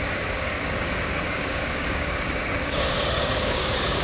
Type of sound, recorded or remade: remade